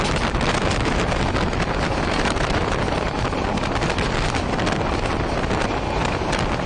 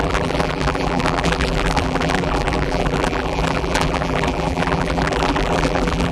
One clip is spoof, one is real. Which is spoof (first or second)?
second